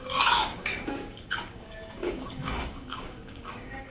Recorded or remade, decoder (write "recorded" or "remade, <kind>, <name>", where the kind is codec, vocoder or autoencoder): remade, codec, DAC